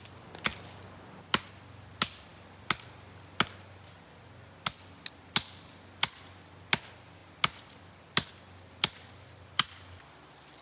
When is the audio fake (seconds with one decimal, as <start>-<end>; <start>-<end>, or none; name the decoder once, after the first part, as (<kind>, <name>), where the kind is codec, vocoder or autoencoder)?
none